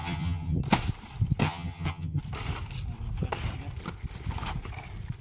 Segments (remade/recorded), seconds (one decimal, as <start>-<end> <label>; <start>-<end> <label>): 0.0-0.6 remade; 0.6-1.4 recorded; 1.4-2.2 remade; 2.2-5.2 recorded